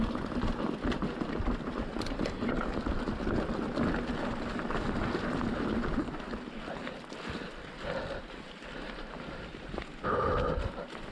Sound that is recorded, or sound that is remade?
recorded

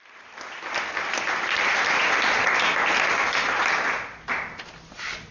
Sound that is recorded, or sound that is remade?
recorded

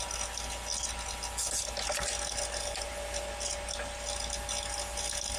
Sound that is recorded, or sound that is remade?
recorded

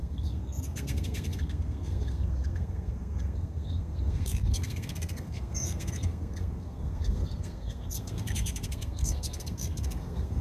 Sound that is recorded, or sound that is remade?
remade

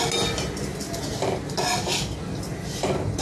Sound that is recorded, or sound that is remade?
recorded